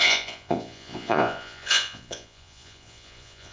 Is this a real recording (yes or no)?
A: no